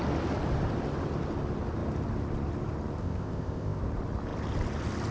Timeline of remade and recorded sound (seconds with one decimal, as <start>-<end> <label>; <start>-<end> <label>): 0.0-3.0 recorded; 3.0-3.8 remade; 3.8-5.1 recorded